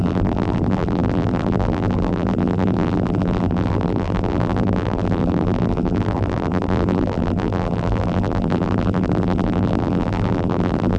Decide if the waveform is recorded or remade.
remade